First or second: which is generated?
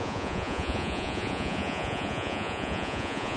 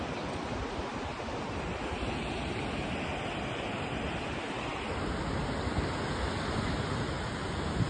first